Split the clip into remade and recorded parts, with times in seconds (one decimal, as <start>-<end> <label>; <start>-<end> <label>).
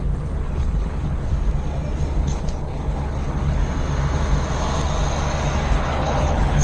0.0-1.3 remade; 1.3-2.2 recorded; 2.2-3.6 remade; 3.6-5.7 recorded; 5.7-6.6 remade